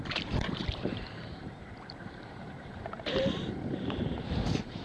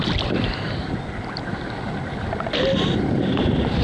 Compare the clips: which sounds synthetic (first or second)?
first